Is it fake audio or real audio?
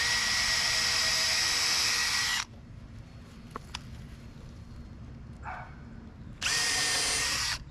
real